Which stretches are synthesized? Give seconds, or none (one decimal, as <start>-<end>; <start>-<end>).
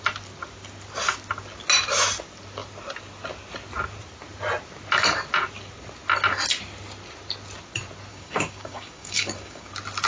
8.1-9.7